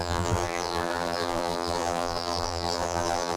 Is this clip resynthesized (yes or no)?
yes